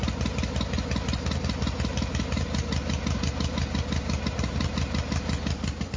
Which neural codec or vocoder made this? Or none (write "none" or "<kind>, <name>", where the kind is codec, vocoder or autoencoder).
none